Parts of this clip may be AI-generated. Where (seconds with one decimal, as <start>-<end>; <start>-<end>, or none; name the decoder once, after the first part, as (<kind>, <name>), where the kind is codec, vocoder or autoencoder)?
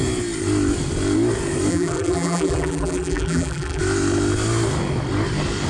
1.7-3.8 (vocoder, BigVGAN v2)